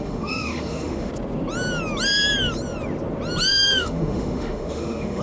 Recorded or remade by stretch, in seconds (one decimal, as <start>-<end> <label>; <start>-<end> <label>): 0.0-1.1 remade; 1.1-3.5 recorded; 3.5-5.2 remade